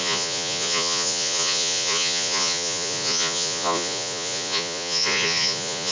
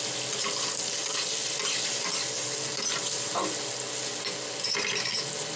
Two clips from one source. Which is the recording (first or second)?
second